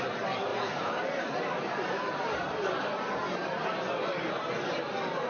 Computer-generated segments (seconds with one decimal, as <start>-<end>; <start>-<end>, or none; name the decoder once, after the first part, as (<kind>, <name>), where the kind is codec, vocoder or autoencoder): 0.5-3.7 (vocoder, BigVGAN v2)